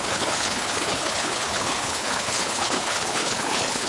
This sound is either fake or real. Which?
fake